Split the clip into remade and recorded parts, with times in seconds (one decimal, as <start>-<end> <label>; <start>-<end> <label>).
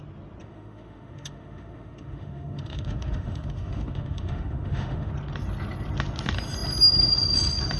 0.0-0.4 recorded; 0.4-5.1 remade; 5.1-7.8 recorded